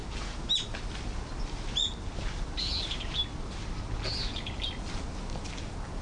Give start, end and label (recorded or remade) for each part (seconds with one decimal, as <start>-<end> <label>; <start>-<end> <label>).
0.0-6.0 recorded